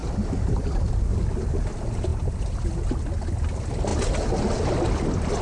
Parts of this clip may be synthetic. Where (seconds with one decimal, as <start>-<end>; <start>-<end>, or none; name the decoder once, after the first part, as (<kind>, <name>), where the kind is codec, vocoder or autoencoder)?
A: none